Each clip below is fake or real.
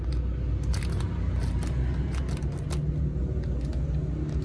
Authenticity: real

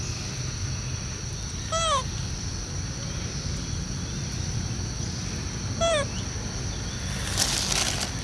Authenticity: real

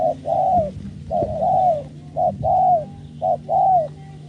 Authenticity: real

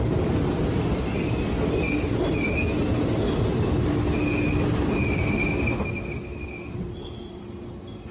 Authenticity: real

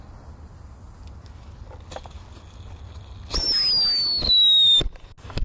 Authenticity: real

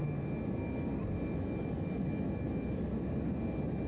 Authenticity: real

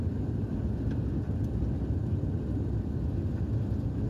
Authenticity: real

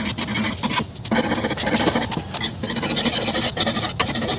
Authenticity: real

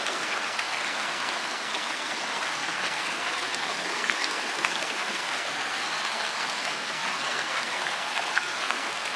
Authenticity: fake